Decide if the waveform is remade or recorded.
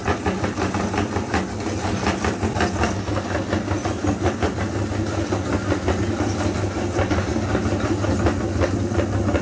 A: recorded